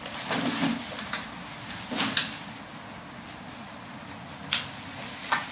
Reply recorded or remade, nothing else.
recorded